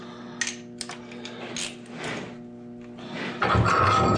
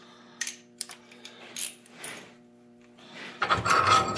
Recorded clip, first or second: first